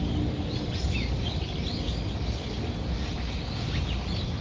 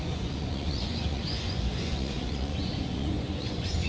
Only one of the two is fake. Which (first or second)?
second